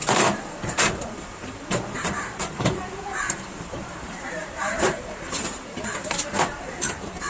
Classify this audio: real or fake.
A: fake